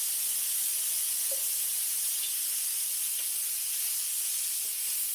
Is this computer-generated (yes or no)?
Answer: no